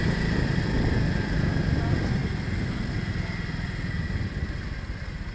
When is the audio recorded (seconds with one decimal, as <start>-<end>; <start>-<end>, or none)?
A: 0.0-5.3